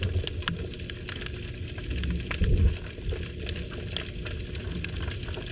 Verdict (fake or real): real